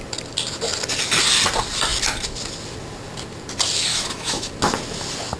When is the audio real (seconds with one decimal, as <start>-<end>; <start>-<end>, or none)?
0.0-3.9; 4.5-5.4